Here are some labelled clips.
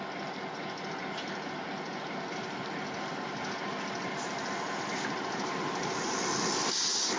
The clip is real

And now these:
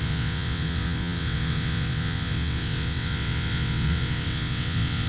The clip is fake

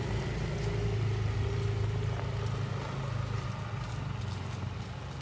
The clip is real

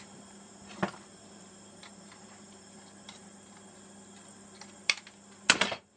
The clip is real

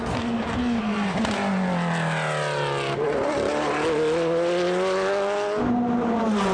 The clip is real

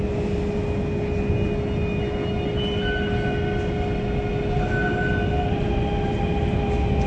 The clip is real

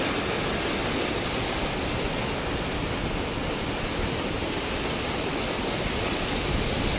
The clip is real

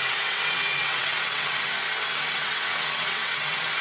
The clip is fake